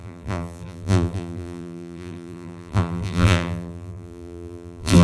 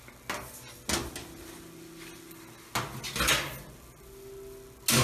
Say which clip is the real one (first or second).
second